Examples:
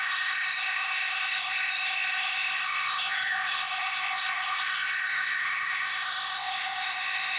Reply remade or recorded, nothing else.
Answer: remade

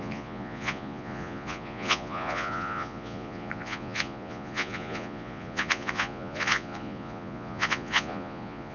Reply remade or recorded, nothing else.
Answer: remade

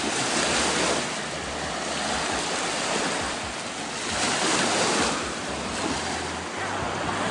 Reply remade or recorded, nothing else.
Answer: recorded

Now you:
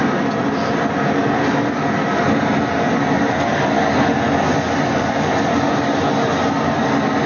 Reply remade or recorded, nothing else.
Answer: recorded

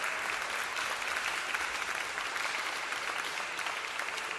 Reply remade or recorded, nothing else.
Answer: recorded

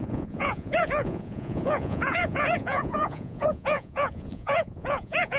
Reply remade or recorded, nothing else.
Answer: remade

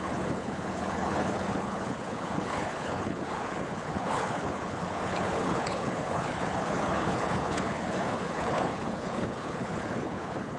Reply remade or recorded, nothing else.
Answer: remade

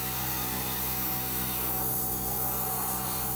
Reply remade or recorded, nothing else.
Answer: remade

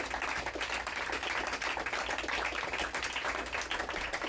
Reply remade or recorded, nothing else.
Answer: recorded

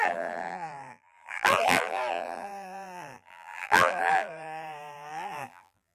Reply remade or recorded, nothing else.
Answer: remade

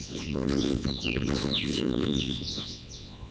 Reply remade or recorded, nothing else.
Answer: remade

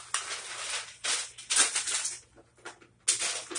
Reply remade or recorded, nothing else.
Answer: recorded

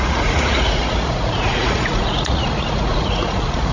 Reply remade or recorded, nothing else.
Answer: remade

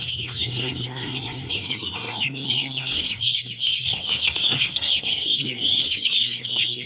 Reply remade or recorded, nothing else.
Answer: remade